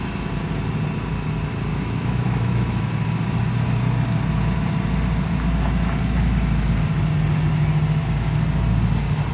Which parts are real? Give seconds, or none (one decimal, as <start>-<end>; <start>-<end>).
0.0-1.7; 2.9-9.3